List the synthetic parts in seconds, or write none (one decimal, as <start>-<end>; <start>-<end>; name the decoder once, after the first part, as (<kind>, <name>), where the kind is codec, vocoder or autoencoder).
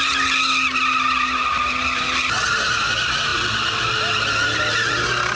none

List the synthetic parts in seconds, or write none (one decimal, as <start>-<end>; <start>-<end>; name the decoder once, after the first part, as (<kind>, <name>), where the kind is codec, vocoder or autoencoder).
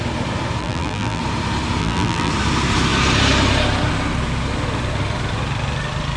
0.6-1.2 (vocoder, BigVGAN v2); 1.8-2.3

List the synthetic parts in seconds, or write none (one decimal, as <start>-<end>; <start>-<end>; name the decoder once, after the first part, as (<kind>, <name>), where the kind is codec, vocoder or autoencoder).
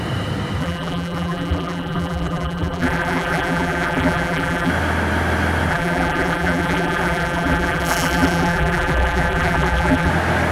0.6-4.7 (vocoder, BigVGAN v2); 5.7-10.1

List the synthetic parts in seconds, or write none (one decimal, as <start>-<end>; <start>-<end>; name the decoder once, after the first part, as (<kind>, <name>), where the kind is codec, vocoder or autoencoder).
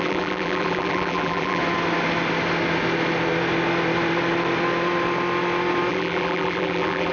0.0-1.6 (vocoder, BigVGAN v2); 5.9-7.1